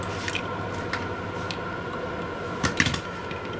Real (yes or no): yes